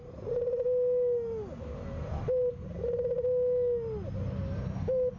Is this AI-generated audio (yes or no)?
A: no